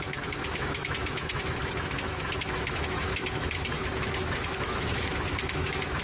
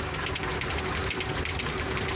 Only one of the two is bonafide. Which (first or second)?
second